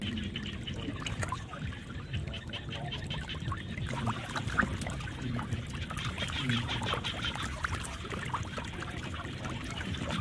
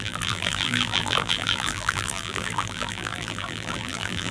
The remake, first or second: second